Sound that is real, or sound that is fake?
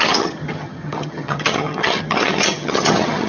fake